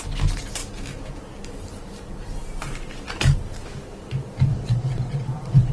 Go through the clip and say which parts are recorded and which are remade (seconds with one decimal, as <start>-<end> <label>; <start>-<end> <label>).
0.0-4.5 recorded; 4.5-5.7 remade